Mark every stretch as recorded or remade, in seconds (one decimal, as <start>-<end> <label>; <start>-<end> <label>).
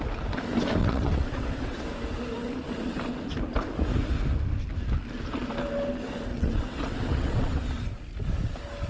0.0-0.8 recorded; 0.8-1.8 remade; 1.8-6.3 recorded; 6.3-7.6 remade; 7.6-8.9 recorded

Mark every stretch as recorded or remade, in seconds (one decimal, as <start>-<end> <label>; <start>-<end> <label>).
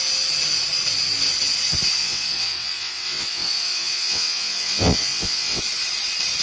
0.0-2.0 recorded; 2.0-5.6 remade; 5.6-6.4 recorded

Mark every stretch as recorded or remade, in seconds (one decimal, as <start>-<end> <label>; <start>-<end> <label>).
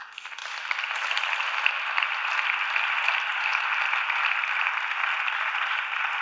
0.0-6.2 recorded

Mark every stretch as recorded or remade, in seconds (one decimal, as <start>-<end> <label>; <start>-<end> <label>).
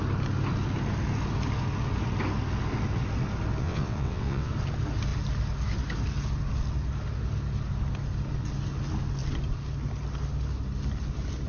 0.0-3.6 recorded; 3.6-4.5 remade; 4.5-11.5 recorded